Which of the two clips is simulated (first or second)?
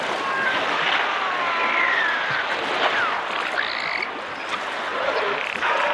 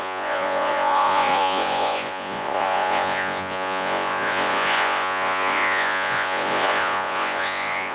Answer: second